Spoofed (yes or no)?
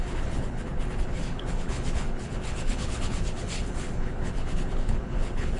yes